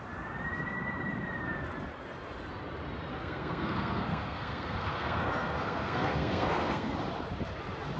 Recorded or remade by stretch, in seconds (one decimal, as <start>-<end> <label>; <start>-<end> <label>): 0.0-3.1 recorded; 3.1-6.9 remade; 6.9-8.0 recorded